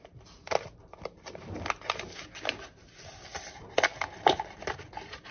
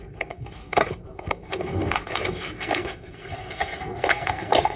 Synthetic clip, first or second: second